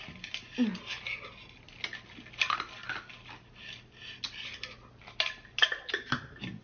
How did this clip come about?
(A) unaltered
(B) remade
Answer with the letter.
A